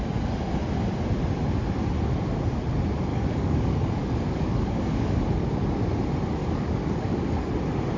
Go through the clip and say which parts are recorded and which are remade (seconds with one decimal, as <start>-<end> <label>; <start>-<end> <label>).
0.0-3.1 recorded; 3.1-5.2 remade; 5.2-6.4 recorded; 6.4-7.5 remade; 7.5-8.0 recorded